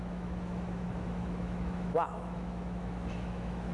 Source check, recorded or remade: remade